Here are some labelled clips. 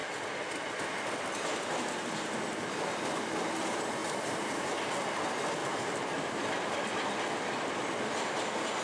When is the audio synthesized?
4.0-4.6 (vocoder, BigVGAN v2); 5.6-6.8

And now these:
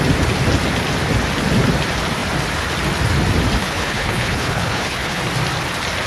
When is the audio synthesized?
3.6-5.2 (codec, HILCodec)

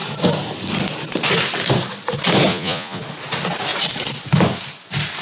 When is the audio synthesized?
2.5-3.0 (vocoder, Vocos)

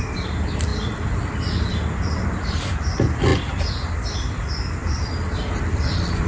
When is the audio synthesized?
0.0-6.3 (vocoder, BigVGAN v2)

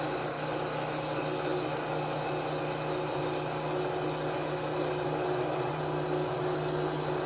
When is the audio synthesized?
none